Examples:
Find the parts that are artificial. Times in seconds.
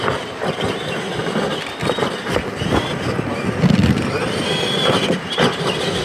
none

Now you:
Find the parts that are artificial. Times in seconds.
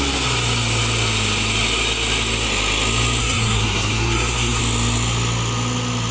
3.2-4.6 (codec, SNAC)